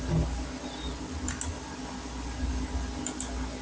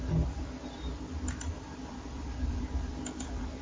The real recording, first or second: first